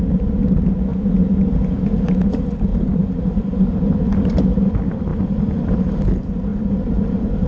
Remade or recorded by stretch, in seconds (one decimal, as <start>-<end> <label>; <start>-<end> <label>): 0.0-2.7 recorded; 2.7-3.4 remade; 3.4-6.5 recorded; 6.5-7.5 remade